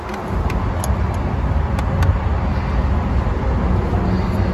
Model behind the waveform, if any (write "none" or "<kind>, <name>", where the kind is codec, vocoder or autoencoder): none